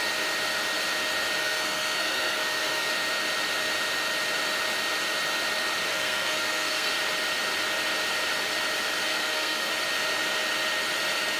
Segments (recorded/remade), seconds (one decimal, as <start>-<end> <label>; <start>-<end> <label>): 0.0-1.4 recorded; 1.4-2.9 remade; 2.9-5.9 recorded; 5.9-6.9 remade; 6.9-9.1 recorded; 9.1-9.7 remade; 9.7-11.4 recorded